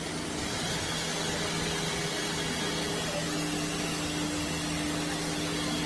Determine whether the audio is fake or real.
real